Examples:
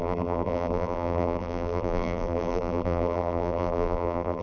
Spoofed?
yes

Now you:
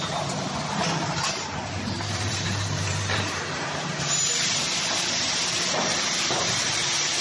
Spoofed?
yes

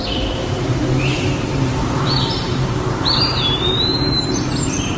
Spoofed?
yes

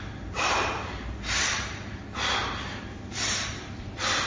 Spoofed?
yes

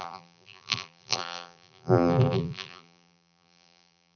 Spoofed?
yes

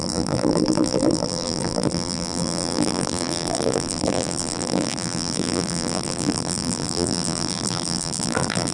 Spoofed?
yes